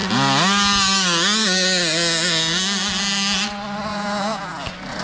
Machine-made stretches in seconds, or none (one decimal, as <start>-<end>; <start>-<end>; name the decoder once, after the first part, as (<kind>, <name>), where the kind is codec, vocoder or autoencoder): 3.9-4.5 (vocoder, Vocos)